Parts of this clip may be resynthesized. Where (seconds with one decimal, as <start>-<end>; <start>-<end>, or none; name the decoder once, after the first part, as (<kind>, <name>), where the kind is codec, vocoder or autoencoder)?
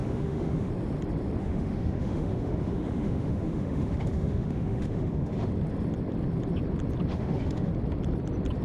0.0-0.7 (autoencoder, DAC-VAE); 1.4-5.5; 7.1-7.7